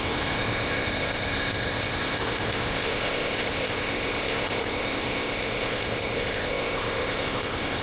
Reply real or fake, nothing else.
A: fake